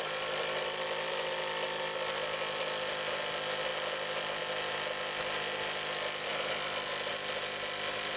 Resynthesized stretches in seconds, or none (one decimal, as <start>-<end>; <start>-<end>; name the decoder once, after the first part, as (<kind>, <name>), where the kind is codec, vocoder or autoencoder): none